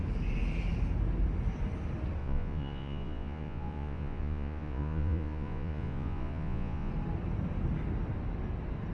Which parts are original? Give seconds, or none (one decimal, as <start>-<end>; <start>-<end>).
0.0-2.2; 6.9-8.9